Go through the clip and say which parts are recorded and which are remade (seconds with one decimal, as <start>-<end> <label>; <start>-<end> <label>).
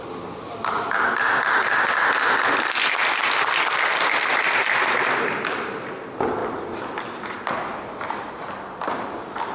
0.0-9.5 recorded